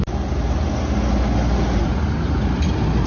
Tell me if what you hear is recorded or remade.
recorded